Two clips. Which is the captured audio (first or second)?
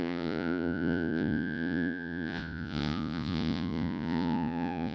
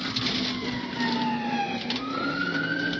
second